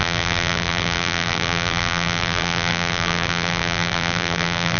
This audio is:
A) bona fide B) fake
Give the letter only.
B